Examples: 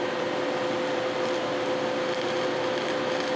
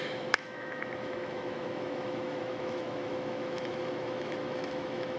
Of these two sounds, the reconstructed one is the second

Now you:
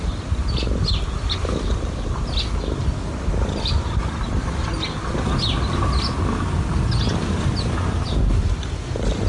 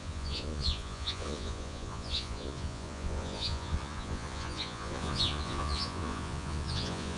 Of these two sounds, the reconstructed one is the second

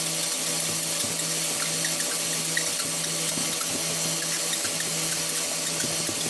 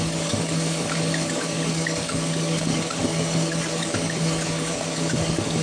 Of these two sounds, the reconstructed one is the second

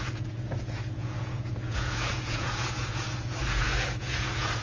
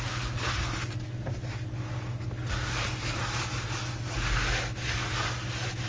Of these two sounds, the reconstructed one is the first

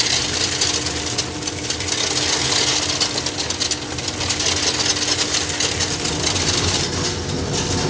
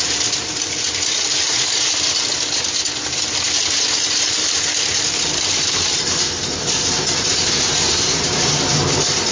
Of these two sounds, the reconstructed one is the second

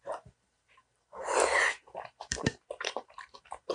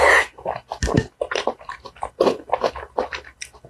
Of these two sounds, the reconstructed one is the first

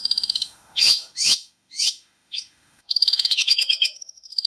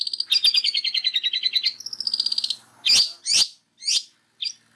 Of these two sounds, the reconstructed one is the first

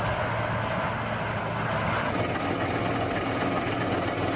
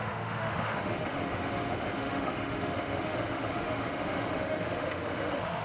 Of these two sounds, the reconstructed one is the second